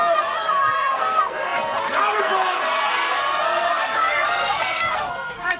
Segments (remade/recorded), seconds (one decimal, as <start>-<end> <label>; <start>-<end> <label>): 0.0-5.6 remade